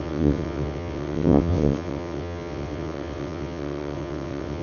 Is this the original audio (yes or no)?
no